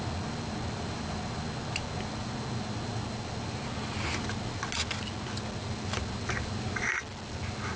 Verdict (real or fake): real